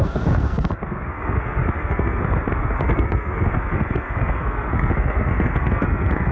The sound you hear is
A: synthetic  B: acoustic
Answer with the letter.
A